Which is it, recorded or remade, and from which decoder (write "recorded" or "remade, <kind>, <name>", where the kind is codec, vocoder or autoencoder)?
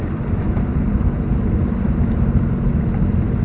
remade, vocoder, BigVGAN v2